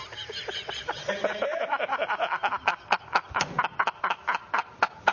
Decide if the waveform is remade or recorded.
recorded